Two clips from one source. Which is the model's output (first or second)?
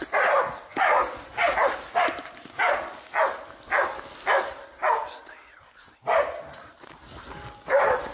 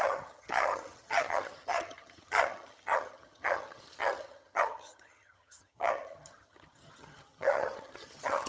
second